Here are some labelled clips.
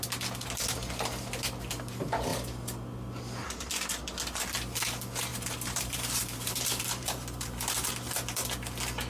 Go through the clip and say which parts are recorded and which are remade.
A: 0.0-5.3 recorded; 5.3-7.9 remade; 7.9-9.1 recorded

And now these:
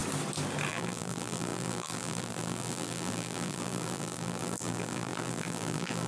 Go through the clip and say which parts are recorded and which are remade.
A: 0.0-0.7 recorded; 0.7-6.1 remade

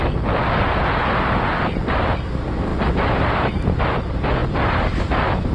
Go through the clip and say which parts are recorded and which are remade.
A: 0.0-2.7 recorded; 2.7-3.8 remade; 3.8-4.4 recorded; 4.4-5.1 remade; 5.1-5.5 recorded

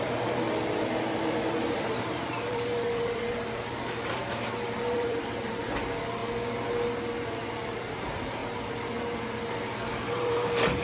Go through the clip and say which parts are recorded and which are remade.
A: 0.0-6.2 remade; 6.2-7.5 recorded; 7.5-8.4 remade; 8.4-9.5 recorded; 9.5-10.8 remade

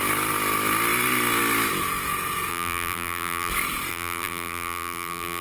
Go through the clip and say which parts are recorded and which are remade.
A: 0.0-2.5 recorded; 2.5-3.5 remade; 3.5-3.9 recorded; 3.9-5.4 remade

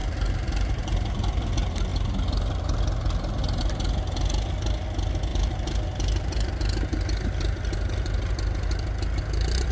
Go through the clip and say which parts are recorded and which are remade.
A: 0.0-1.5 remade; 1.5-5.3 recorded; 5.3-6.5 remade; 6.5-9.7 recorded

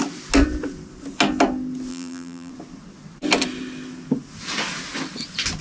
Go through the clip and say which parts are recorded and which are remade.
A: 0.0-1.9 recorded; 1.9-2.5 remade; 2.5-5.6 recorded